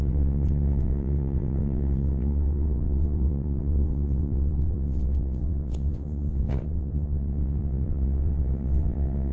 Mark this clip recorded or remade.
remade